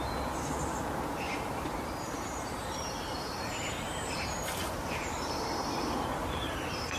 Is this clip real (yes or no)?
no